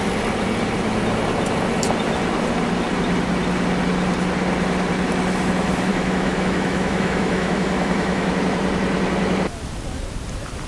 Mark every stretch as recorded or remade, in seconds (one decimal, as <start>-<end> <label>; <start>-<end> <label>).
0.0-5.9 recorded; 5.9-8.3 remade; 8.3-10.7 recorded